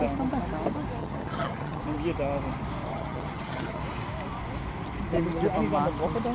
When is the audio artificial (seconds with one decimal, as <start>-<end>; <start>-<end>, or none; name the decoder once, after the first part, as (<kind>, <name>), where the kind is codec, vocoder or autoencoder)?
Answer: 1.0-1.8 (vocoder, HiFi-GAN); 2.9-3.8